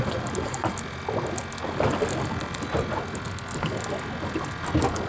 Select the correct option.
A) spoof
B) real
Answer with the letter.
B